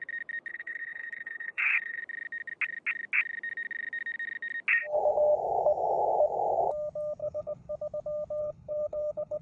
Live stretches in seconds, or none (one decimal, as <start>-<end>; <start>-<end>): 0.0-0.5; 2.0-7.2; 7.7-8.4